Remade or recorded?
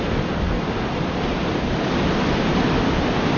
recorded